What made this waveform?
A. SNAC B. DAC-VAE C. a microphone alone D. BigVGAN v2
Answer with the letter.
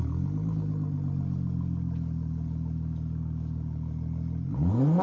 C